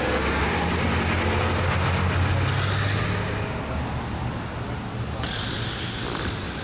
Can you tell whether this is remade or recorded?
recorded